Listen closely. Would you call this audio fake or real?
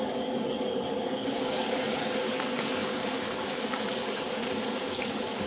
fake